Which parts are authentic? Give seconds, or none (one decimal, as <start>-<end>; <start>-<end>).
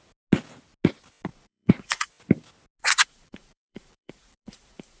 0.0-1.3; 2.1-2.8